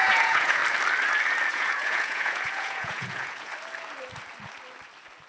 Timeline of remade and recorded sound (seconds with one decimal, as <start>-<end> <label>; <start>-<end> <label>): 0.0-0.6 remade; 0.6-1.5 recorded; 1.5-3.5 remade; 3.5-5.3 recorded